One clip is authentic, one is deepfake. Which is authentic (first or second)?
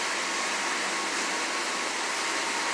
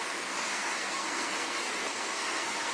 first